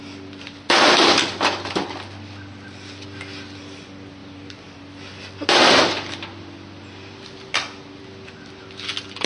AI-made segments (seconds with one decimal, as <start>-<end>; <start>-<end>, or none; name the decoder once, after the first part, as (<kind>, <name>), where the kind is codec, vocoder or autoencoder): none